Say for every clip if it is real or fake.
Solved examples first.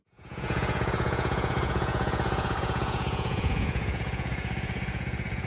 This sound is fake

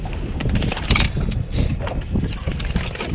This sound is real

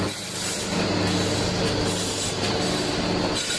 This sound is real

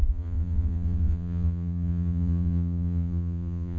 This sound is fake